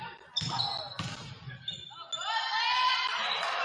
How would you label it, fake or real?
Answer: real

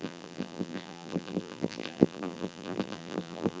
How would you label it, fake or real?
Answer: fake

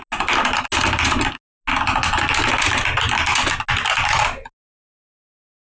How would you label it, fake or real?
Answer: real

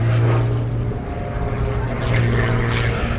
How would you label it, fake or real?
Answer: real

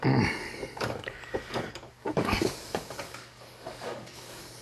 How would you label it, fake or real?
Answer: fake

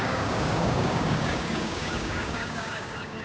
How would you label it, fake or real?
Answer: fake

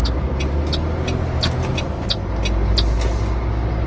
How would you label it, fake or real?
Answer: real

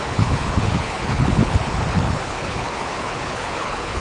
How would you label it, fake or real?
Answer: fake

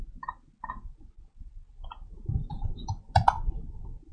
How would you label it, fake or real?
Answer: real